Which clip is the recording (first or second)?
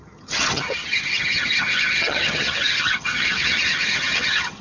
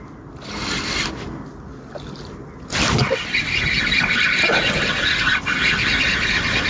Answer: second